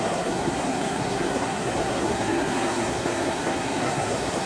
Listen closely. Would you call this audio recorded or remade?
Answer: remade